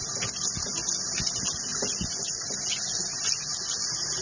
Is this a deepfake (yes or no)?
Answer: no